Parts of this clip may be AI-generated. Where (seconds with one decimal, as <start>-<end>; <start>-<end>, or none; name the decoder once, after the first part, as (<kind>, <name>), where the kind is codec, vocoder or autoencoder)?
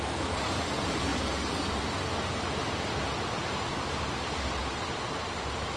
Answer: 0.0-1.1 (vocoder, BigVGAN v2); 4.0-4.6; 5.3-5.8